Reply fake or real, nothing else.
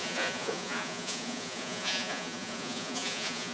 fake